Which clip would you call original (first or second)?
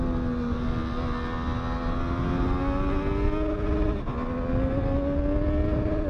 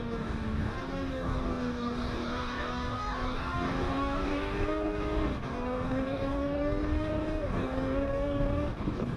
first